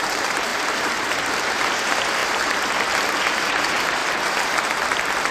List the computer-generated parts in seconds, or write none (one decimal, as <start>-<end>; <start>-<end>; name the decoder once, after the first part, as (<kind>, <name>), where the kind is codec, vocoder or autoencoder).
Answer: 0.0-2.2 (vocoder, BigVGAN v2); 3.5-4.0

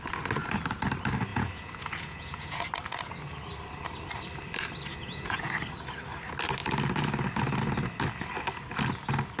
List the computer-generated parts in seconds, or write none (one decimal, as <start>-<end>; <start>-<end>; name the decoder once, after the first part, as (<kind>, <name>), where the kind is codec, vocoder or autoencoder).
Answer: 1.3-2.6 (vocoder, Vocos); 4.9-5.5

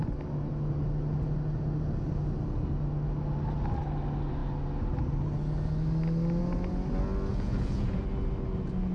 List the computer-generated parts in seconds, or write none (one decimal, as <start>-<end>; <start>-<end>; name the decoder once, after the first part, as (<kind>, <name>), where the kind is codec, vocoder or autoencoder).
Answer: 7.3-8.0 (vocoder, Vocos)

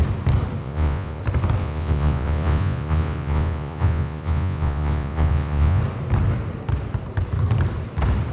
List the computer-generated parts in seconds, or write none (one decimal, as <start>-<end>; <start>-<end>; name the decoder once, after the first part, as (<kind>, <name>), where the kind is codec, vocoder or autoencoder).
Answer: 0.6-1.2 (vocoder, Vocos); 1.6-5.8